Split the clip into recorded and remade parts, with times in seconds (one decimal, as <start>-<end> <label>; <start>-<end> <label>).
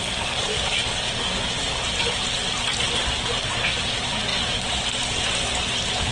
0.0-6.1 recorded